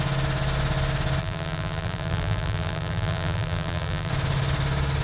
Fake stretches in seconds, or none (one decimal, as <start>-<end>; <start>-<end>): 1.2-4.1